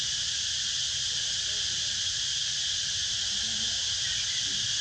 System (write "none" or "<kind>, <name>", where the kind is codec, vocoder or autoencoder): none